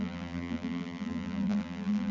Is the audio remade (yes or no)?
yes